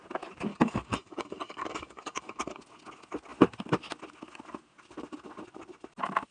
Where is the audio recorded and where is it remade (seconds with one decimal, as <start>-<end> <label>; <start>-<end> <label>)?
0.0-0.5 recorded; 0.5-2.6 remade; 2.6-6.3 recorded